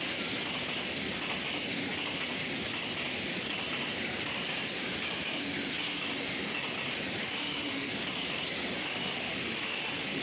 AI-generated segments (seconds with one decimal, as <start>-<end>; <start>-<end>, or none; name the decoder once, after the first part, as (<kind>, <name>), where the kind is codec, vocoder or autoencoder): 7.2-7.9 (autoencoder, DAC-VAE); 8.8-10.2